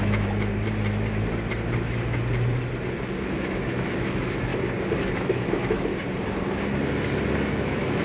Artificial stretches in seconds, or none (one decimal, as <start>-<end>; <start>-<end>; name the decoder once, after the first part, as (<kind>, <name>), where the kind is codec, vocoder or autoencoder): 0.0-0.5 (autoencoder, DAC-VAE); 3.2-4.5; 5.1-5.9; 7.5-8.0